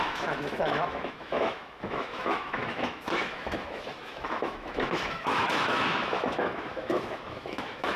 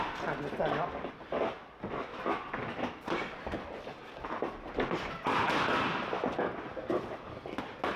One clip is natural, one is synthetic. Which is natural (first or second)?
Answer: second